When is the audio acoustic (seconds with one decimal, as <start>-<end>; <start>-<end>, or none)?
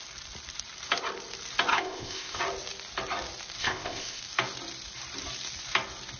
0.0-1.7; 2.4-3.6; 4.2-6.2